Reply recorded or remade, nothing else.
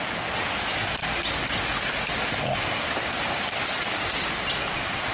recorded